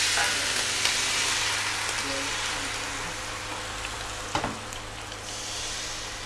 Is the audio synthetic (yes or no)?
no